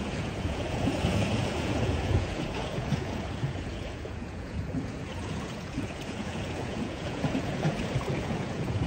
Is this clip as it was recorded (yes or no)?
no